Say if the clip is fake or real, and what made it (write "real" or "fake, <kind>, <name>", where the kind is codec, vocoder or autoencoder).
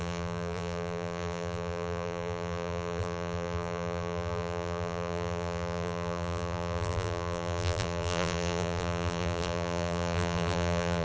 fake, vocoder, BigVGAN v2